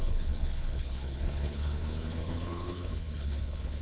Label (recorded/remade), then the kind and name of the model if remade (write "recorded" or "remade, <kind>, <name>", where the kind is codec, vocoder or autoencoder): remade, codec, HILCodec